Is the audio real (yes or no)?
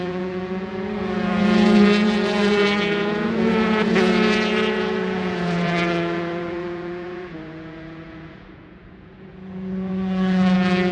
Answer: no